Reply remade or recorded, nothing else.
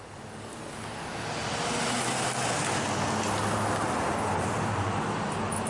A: recorded